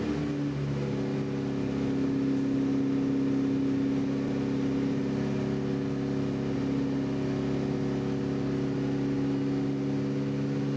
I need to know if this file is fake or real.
real